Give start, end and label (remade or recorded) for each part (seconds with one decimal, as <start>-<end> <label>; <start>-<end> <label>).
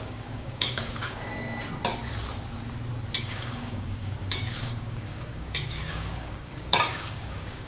0.0-1.3 remade; 1.3-3.2 recorded; 3.2-7.7 remade